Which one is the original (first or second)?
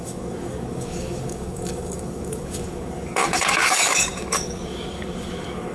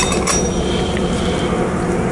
second